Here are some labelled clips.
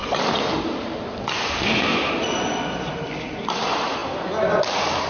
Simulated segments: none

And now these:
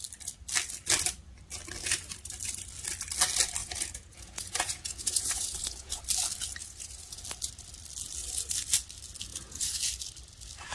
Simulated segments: 3.6-6.0 (vocoder, Vocos); 6.6-7.2; 9.3-9.9

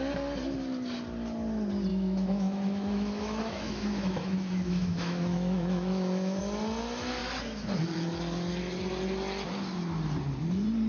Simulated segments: 1.9-6.4 (autoencoder, DAC-VAE)

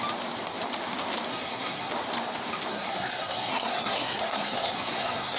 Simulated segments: 1.3-1.9 (codec, SNAC); 2.7-5.4